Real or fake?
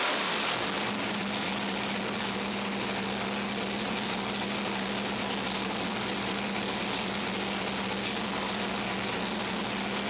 real